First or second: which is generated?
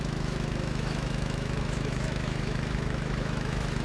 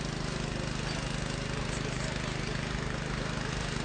first